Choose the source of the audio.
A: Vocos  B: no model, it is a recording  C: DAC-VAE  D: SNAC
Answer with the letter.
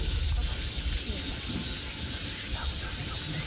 B